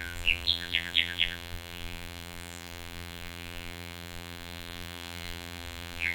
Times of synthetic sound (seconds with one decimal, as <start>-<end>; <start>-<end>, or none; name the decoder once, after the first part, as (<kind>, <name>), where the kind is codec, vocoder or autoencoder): 0.0-6.1 (vocoder, BigVGAN v2)